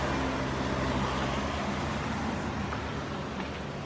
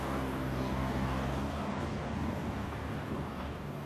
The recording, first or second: first